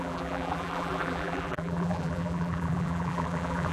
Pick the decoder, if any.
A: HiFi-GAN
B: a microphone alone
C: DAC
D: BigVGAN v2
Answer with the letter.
D